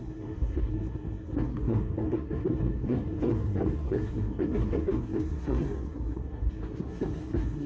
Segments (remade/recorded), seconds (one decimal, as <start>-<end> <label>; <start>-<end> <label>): 0.0-7.7 remade